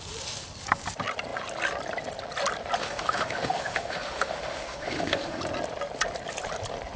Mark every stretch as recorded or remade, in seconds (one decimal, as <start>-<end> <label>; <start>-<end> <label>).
0.0-2.8 recorded; 2.8-5.4 remade; 5.4-7.0 recorded